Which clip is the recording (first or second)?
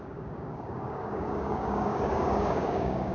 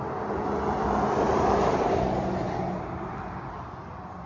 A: second